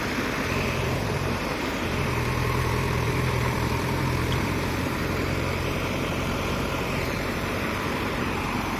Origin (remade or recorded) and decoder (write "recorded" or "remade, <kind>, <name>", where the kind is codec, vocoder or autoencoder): remade, vocoder, BigVGAN v2